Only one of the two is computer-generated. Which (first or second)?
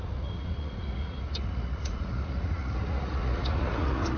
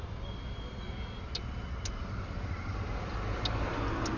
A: first